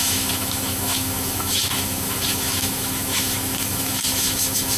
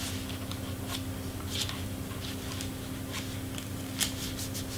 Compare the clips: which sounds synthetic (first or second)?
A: first